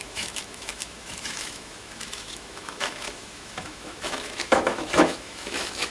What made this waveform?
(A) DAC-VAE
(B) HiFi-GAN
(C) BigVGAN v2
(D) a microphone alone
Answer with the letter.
A